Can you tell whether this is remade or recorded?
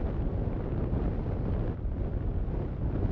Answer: recorded